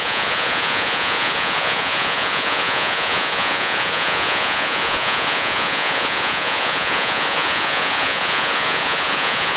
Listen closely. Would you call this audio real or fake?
fake